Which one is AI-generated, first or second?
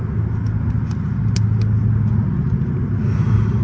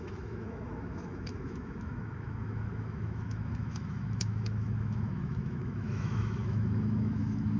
second